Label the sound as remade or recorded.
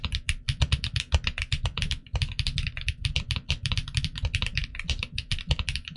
remade